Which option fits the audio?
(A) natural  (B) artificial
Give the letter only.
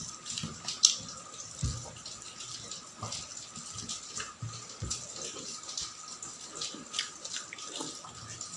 A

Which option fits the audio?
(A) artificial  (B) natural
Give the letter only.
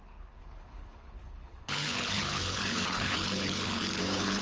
A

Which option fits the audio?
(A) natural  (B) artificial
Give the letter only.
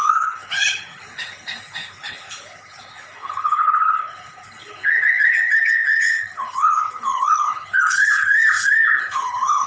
B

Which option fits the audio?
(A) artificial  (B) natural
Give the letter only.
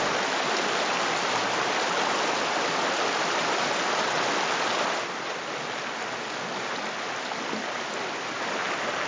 B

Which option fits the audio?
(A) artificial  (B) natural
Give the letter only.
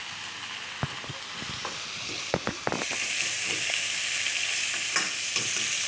B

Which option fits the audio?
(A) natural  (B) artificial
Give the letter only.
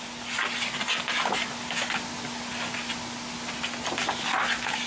A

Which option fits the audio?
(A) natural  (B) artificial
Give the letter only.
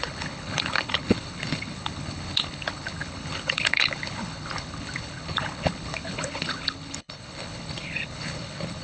B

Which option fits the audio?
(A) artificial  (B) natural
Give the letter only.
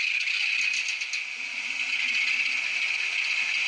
B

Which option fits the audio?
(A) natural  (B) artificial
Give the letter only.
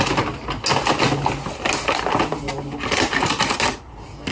A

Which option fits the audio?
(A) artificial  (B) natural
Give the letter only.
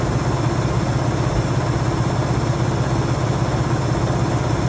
B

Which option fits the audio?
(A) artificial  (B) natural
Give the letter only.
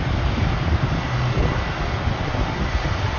B